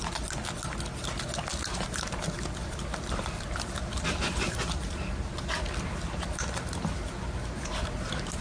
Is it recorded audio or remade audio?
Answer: recorded